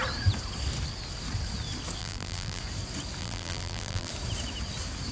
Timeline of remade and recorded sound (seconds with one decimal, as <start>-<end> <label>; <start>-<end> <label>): 0.0-2.0 recorded; 2.0-2.6 remade; 2.6-3.2 recorded; 3.2-4.1 remade; 4.1-5.1 recorded